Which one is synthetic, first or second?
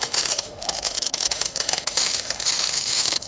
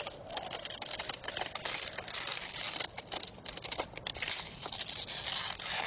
first